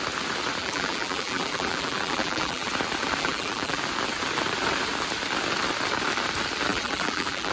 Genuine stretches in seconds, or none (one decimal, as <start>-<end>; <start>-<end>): 0.0-0.6; 2.7-3.2; 3.8-6.7